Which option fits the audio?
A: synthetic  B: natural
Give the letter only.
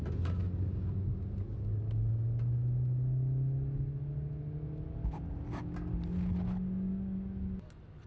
B